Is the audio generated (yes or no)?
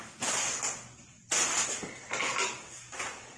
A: no